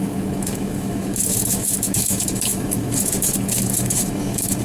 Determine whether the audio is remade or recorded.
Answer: remade